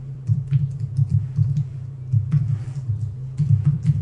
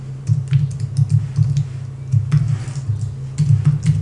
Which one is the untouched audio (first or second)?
second